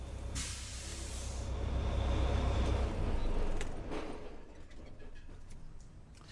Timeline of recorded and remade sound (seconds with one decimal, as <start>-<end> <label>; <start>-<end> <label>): 0.0-6.3 recorded